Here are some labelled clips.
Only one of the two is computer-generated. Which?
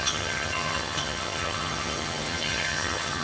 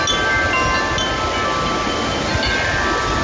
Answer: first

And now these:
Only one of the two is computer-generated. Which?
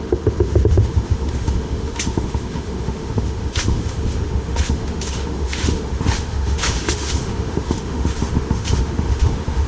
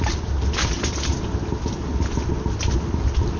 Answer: first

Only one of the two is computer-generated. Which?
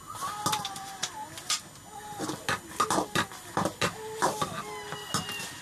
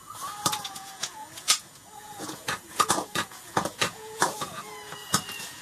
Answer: second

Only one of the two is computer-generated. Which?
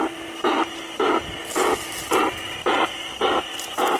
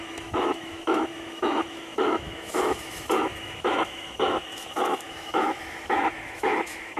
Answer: second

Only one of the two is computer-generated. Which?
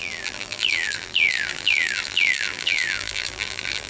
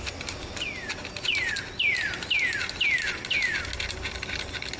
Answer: first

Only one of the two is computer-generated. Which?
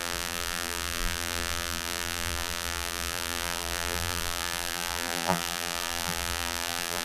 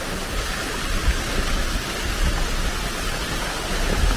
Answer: first